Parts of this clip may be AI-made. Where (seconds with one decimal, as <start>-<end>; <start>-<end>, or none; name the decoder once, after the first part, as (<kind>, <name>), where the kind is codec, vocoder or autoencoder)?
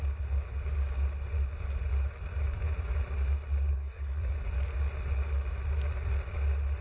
3.7-4.3 (codec, SNAC)